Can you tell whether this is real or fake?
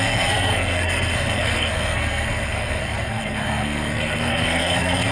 fake